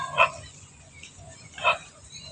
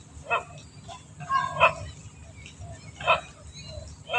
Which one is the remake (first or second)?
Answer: first